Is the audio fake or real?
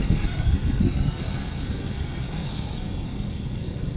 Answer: fake